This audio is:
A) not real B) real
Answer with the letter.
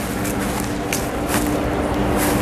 B